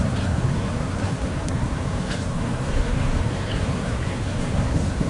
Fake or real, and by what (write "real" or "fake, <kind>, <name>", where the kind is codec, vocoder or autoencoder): fake, codec, SNAC